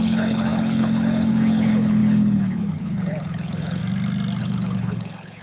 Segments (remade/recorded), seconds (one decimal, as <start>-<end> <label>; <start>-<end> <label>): 0.0-3.8 remade; 3.8-4.4 recorded; 4.4-5.4 remade